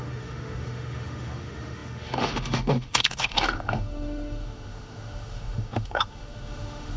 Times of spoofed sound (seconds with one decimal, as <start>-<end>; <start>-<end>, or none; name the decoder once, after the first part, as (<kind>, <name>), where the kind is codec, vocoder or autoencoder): 0.0-7.0 (autoencoder, DAC-VAE)